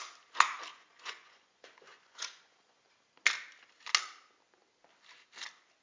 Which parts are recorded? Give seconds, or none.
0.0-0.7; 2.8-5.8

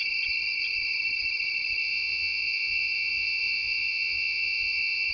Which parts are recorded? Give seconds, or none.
0.0-1.8

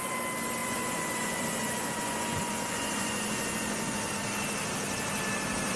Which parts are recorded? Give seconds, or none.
0.0-0.6; 4.1-5.8

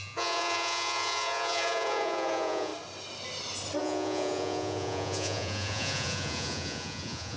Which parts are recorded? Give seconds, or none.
2.7-3.8